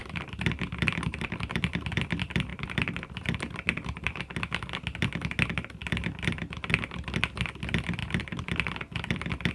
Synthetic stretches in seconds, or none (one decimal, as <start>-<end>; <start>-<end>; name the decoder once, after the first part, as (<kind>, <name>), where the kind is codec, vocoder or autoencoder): 0.0-1.9 (vocoder, BigVGAN v2); 2.5-4.2; 5.8-6.7; 8.0-9.5